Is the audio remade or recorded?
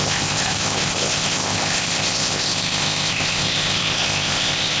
remade